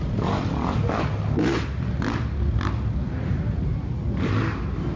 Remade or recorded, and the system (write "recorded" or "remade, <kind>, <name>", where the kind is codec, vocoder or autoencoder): recorded